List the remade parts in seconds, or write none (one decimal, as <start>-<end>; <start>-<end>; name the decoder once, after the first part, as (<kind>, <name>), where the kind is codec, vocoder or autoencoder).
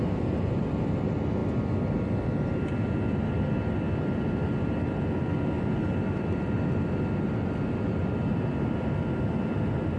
none